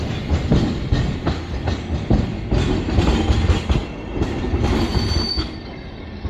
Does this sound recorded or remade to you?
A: recorded